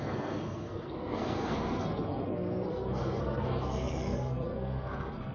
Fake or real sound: fake